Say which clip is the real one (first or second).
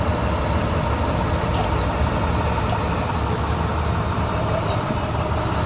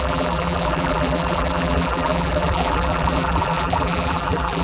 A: first